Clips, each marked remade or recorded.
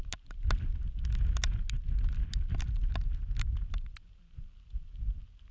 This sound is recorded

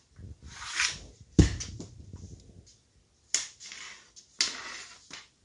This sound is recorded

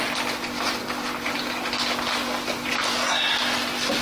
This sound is recorded